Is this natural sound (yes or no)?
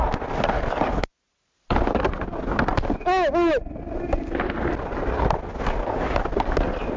yes